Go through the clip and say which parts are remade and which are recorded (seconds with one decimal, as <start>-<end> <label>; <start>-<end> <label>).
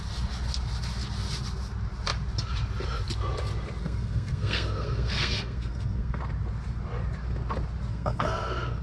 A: 0.0-3.8 recorded; 3.8-6.2 remade; 6.2-7.9 recorded; 7.9-8.8 remade